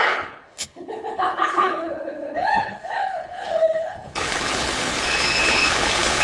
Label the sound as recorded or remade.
remade